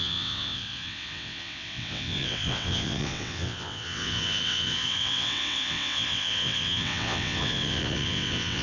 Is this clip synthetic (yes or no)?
yes